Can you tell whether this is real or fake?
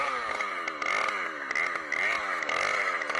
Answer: real